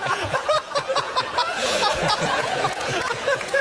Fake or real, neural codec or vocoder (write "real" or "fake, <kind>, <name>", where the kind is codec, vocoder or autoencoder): fake, vocoder, Vocos